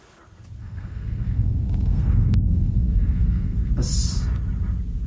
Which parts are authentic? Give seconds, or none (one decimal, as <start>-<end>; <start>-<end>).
0.0-0.6; 3.7-5.1